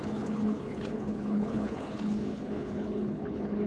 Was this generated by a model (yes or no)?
yes